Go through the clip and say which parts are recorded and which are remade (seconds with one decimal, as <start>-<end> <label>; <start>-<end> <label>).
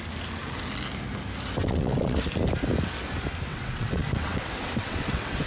0.0-1.6 recorded; 1.6-2.3 remade; 2.3-3.5 recorded; 3.5-5.5 remade